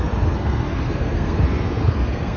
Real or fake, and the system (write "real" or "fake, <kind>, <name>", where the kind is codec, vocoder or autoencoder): fake, codec, SNAC